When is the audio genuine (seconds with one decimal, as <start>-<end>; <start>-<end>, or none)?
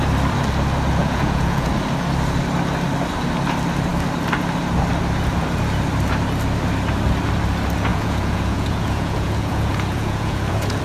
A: 0.0-1.0; 1.7-7.9